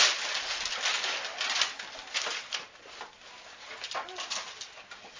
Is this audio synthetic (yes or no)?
no